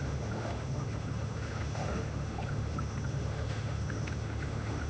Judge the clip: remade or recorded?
remade